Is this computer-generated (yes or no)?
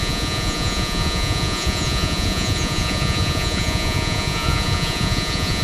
yes